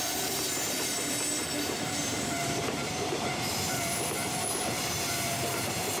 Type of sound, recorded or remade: remade